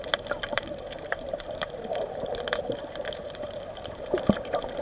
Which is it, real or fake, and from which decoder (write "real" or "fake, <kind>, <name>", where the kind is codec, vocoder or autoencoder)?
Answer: fake, vocoder, BigVGAN v2